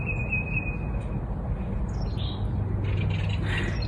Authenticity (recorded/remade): recorded